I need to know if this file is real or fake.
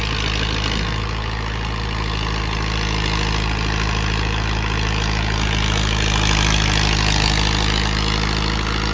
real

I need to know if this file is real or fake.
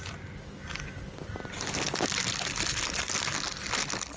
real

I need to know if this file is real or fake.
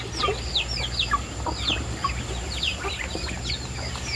real